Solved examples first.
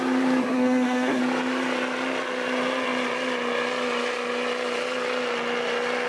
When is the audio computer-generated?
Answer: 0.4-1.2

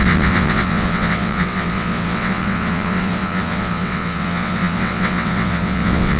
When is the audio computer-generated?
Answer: 0.0-6.2

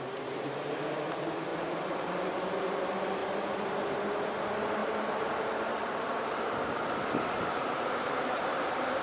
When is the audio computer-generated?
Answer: 1.5-2.1; 4.8-8.5